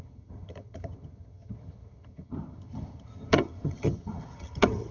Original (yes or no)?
no